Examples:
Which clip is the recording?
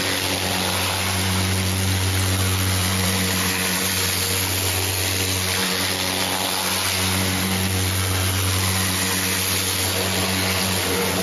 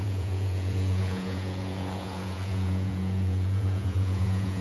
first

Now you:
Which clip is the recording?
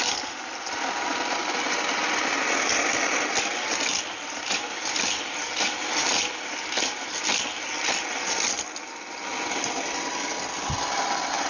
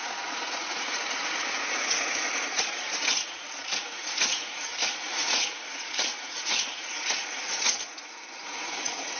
first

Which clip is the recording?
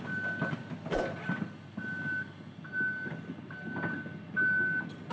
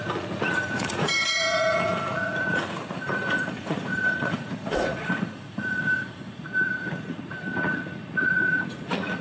first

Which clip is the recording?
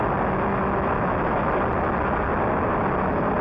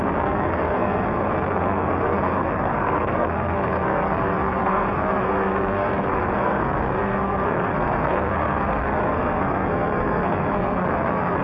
first